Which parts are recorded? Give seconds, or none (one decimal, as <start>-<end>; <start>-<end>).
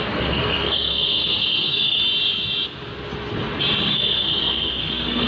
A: 2.0-3.8